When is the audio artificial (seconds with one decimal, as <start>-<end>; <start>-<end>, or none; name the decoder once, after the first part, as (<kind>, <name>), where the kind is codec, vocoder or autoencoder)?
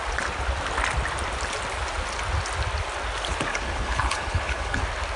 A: 3.5-4.8 (codec, HILCodec)